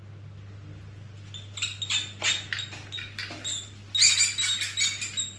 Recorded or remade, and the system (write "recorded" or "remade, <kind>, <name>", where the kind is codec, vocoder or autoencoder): recorded